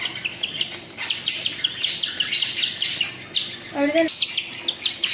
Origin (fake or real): real